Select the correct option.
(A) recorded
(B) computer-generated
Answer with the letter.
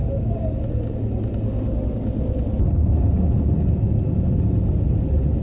A